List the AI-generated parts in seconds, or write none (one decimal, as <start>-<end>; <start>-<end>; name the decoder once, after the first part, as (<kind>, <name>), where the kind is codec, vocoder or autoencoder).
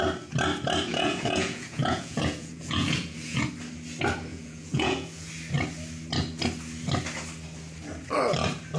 0.9-3.5 (vocoder, Vocos); 4.3-5.3